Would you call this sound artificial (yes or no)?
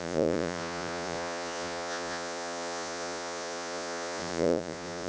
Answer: yes